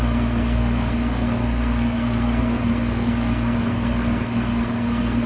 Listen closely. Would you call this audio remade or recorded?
remade